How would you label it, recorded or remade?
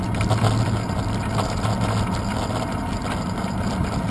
recorded